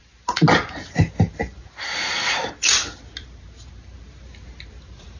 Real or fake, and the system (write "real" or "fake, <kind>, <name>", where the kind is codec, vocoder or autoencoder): real